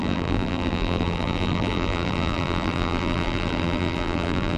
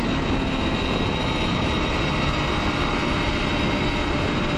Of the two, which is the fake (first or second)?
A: first